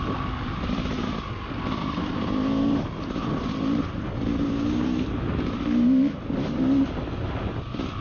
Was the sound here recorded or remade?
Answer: recorded